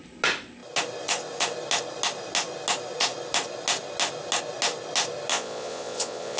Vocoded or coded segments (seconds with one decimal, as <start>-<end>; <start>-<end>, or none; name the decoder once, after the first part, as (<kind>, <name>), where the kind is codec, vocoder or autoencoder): 5.3-6.4 (vocoder, Vocos)